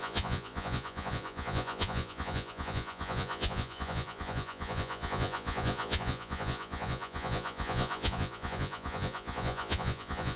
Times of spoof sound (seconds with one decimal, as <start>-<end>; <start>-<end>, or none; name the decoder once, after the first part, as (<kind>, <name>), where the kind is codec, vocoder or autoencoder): 0.0-10.4 (vocoder, Vocos)